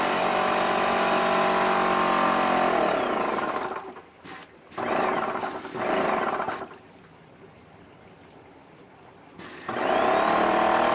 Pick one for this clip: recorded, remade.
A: recorded